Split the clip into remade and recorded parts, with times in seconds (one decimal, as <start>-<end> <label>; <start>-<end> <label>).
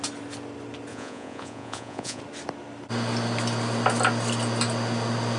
0.0-0.9 recorded; 0.9-2.2 remade; 2.2-5.4 recorded